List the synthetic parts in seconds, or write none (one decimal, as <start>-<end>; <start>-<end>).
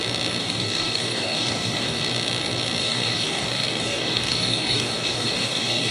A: 0.4-2.0; 2.8-5.9